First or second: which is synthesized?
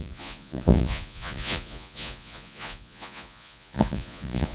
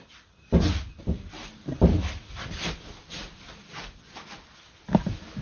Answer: first